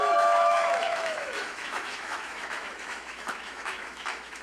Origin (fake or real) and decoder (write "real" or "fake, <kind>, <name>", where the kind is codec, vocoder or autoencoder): fake, autoencoder, DAC-VAE